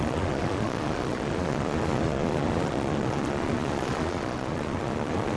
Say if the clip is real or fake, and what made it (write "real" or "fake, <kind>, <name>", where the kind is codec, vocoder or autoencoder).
fake, vocoder, Vocos